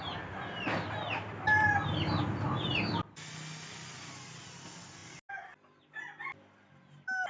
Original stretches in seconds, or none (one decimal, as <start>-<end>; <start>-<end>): 0.0-7.3